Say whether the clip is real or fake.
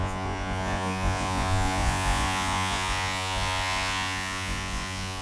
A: fake